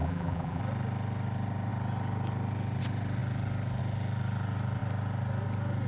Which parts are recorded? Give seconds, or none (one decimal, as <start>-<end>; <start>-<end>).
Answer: 0.6-5.9